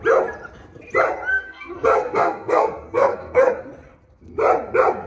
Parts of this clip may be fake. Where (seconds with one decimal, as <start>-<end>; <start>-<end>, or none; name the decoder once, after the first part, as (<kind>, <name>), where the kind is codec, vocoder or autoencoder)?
1.3-3.5 (codec, SNAC)